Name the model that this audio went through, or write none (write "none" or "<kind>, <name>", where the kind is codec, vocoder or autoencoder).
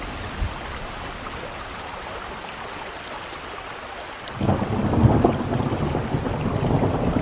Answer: none